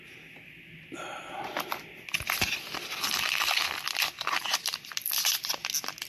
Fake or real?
real